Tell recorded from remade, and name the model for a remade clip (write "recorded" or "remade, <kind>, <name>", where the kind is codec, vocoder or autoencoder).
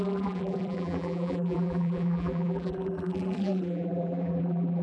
remade, vocoder, BigVGAN v2